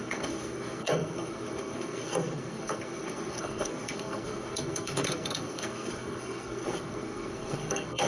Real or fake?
fake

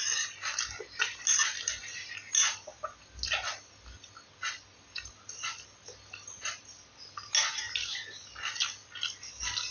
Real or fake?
real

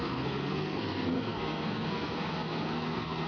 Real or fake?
fake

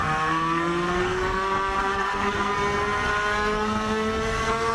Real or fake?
fake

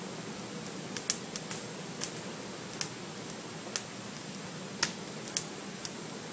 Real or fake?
real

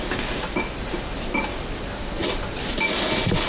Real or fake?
real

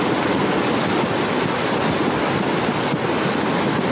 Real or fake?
real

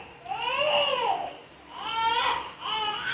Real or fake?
real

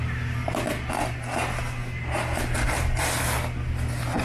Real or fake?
real